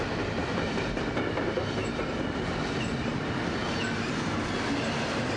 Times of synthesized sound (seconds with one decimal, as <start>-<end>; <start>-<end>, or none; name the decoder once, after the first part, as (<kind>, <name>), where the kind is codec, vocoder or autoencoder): 0.0-1.8 (vocoder, BigVGAN v2); 5.0-5.4